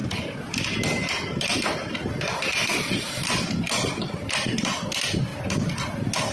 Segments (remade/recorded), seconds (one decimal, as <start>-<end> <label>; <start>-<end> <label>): 0.0-6.3 recorded